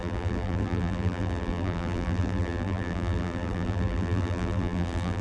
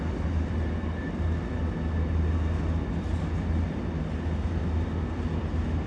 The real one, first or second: second